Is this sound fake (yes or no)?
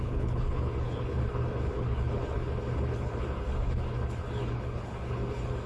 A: yes